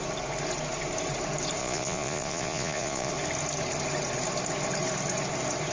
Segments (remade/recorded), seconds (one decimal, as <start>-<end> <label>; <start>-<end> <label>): 0.0-1.6 recorded; 1.6-3.1 remade; 3.1-5.7 recorded